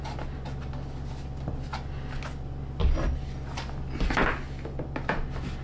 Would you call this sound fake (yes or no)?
no